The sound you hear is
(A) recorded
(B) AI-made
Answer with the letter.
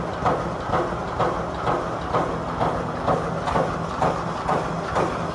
A